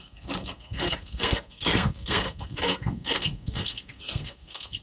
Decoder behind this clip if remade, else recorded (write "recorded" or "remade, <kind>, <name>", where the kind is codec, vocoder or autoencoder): remade, codec, SNAC